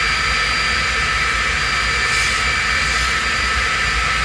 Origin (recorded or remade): recorded